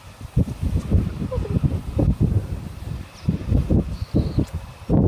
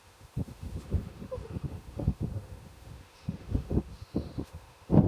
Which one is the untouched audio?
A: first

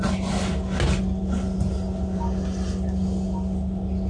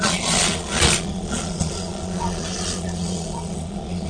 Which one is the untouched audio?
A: first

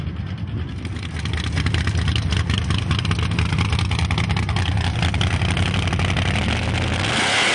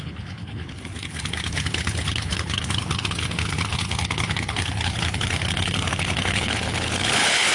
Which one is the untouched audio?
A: first